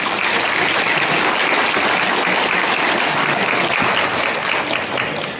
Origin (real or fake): real